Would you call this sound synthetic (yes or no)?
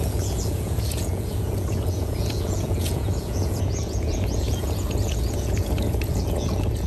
yes